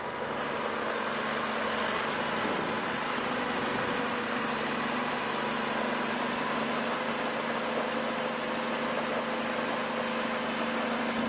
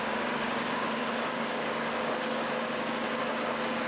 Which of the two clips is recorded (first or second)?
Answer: first